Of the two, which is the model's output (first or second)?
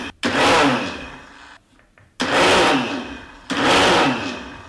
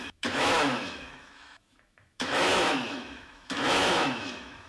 second